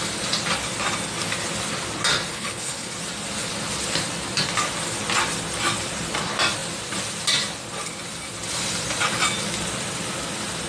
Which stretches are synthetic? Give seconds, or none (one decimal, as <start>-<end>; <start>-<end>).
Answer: 2.3-2.9